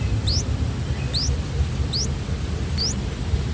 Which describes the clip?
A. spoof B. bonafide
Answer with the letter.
B